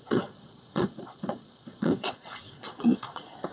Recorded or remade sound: remade